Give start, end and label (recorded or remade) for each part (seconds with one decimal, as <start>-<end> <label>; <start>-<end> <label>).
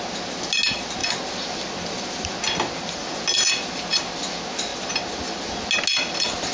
0.0-6.5 recorded